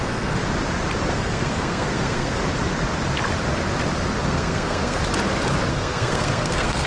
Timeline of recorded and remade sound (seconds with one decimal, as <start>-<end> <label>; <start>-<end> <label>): 0.0-0.4 remade; 0.4-1.1 recorded; 1.1-2.4 remade; 2.4-4.2 recorded; 4.2-5.0 remade; 5.0-5.7 recorded; 5.7-6.9 remade

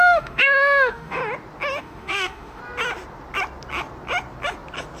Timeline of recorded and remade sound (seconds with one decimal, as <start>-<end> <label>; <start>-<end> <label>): 0.0-1.2 remade; 1.2-1.8 recorded; 1.8-2.6 remade; 2.6-5.0 recorded